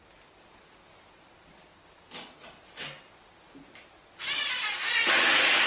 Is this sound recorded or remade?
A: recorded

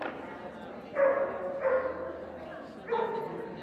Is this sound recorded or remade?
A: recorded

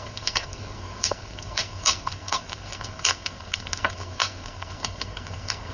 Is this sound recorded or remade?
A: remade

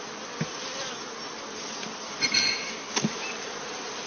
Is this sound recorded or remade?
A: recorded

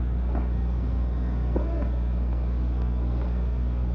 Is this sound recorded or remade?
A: remade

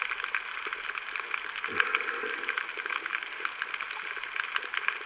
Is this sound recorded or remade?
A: recorded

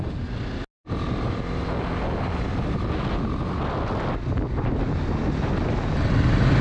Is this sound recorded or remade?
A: recorded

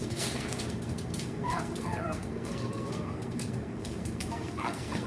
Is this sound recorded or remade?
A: remade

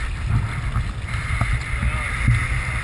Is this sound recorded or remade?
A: recorded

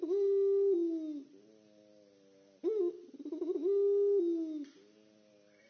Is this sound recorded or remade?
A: recorded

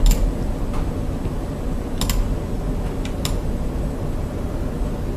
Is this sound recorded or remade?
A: recorded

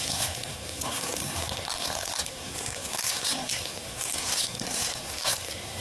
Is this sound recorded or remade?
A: remade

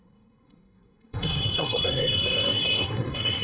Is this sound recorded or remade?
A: remade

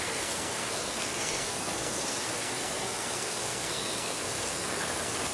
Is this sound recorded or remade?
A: remade